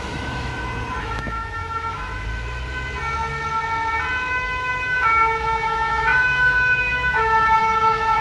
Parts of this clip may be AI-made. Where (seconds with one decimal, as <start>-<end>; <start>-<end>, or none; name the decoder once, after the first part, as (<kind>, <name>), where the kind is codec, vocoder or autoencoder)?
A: 0.0-0.5 (autoencoder, DAC-VAE); 1.0-2.1; 4.3-8.2